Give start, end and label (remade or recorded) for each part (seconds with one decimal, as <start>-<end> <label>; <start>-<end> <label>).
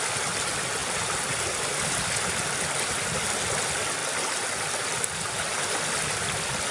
0.0-6.7 recorded